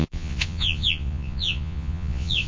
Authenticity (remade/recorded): remade